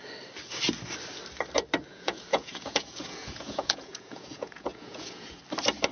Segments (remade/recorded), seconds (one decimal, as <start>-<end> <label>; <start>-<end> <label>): 0.0-1.9 recorded; 1.9-5.4 remade; 5.4-5.9 recorded

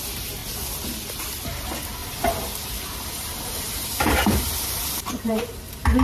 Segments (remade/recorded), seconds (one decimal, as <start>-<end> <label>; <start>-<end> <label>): 0.0-2.0 recorded; 2.0-5.6 remade; 5.6-6.0 recorded

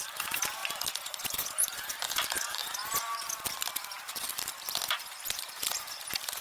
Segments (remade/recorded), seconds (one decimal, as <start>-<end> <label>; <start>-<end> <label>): 0.0-0.6 remade; 0.6-1.2 recorded; 1.2-2.6 remade; 2.6-3.7 recorded; 3.7-4.5 remade; 4.5-5.0 recorded; 5.0-6.4 remade

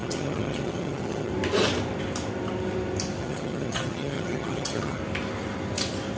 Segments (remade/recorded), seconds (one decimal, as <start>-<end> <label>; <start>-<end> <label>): 0.0-1.3 remade; 1.3-3.2 recorded; 3.2-5.0 remade; 5.0-6.2 recorded

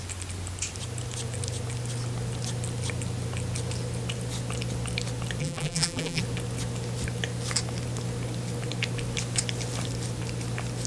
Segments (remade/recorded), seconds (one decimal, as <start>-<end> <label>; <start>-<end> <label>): 0.0-5.4 recorded; 5.4-6.2 remade; 6.2-10.9 recorded

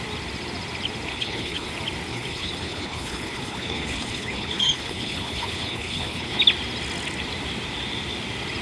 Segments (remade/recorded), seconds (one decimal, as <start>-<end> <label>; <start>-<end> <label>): 0.0-1.1 recorded; 1.1-1.7 remade; 1.7-2.1 recorded; 2.1-6.4 remade; 6.4-8.6 recorded

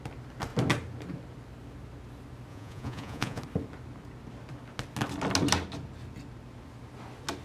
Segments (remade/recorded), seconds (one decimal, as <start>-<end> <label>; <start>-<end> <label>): 0.0-2.5 recorded; 2.5-3.4 remade; 3.4-7.4 recorded

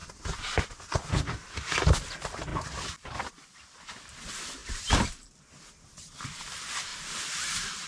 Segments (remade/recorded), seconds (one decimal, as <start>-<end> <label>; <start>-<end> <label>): 0.0-2.5 recorded; 2.5-3.3 remade; 3.3-6.9 recorded; 6.9-7.9 remade